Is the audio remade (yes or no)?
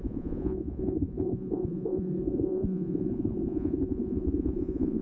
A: yes